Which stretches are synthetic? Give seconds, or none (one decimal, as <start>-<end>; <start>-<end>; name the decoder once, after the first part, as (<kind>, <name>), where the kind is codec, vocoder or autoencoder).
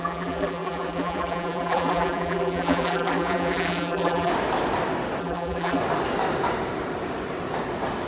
0.0-4.3 (vocoder, BigVGAN v2); 5.2-5.8